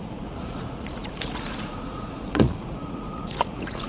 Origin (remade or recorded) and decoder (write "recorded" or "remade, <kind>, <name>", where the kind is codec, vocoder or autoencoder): remade, vocoder, Vocos